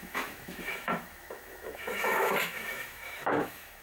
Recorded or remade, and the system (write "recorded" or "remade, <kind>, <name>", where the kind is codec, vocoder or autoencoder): remade, autoencoder, DAC-VAE